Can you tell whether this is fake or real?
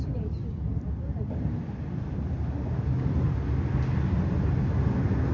real